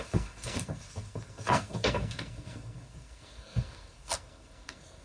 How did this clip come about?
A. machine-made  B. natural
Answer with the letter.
A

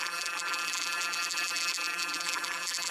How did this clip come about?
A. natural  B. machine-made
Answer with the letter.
B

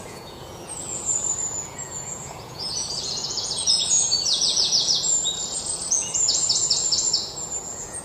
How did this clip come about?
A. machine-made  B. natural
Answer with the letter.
A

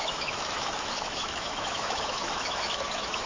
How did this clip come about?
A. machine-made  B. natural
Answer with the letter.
A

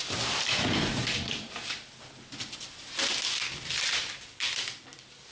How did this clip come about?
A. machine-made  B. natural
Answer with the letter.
A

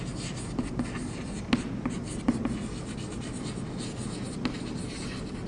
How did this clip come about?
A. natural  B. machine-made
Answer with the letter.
A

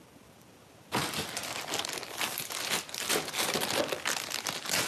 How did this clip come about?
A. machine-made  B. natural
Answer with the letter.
B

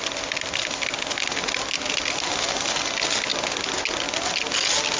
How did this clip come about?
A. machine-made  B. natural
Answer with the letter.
B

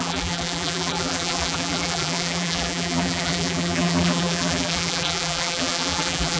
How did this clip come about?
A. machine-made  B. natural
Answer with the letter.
A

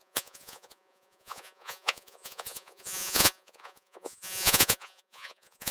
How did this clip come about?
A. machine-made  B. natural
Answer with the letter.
A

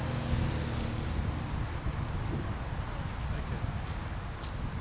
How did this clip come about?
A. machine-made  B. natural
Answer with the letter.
B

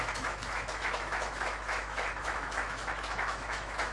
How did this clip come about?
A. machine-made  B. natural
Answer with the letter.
A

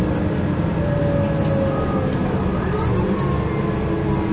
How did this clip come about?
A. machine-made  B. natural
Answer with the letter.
B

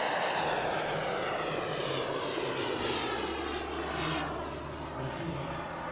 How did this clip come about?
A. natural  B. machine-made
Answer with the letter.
A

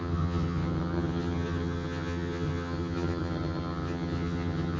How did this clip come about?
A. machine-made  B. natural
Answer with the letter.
A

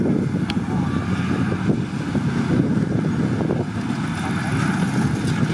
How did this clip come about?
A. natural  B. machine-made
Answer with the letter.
A